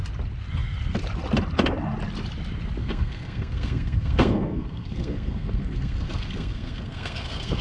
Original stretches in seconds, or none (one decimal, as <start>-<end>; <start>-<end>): 0.0-2.8